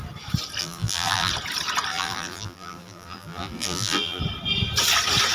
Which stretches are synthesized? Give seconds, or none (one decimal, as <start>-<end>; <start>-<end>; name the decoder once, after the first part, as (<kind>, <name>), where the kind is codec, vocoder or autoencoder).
0.6-1.3 (vocoder, BigVGAN v2); 1.9-4.2